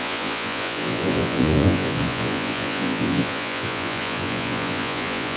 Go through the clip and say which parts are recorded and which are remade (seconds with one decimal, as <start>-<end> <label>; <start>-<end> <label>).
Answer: 0.0-5.4 remade